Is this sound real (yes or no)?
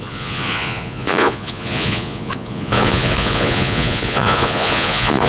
no